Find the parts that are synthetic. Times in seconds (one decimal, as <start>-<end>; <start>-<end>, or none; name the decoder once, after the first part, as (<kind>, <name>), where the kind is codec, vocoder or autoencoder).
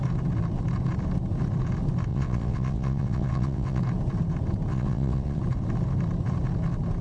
2.1-3.8 (vocoder, WaveNeXt); 4.7-5.4